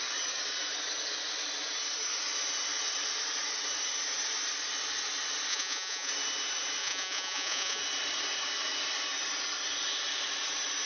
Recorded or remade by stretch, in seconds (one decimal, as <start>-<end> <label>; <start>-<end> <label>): 0.0-5.5 recorded; 5.5-6.1 remade; 6.1-6.8 recorded; 6.8-7.8 remade; 7.8-10.9 recorded